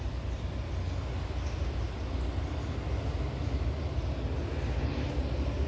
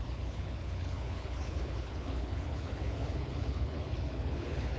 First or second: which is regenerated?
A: second